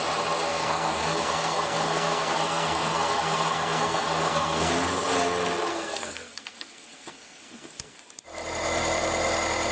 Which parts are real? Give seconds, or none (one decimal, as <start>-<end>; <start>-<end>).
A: 0.0-0.5; 4.7-5.7; 8.0-9.7